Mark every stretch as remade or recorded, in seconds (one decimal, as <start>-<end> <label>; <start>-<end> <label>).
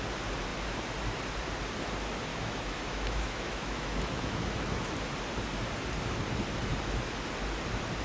0.0-2.3 recorded; 2.3-4.9 remade; 4.9-8.0 recorded